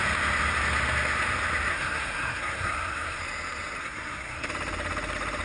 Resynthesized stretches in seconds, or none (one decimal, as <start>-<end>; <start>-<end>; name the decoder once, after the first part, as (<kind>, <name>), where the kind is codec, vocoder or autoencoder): 1.7-3.2 (codec, SNAC); 3.8-4.5